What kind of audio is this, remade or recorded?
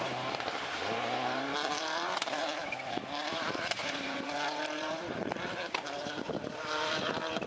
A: remade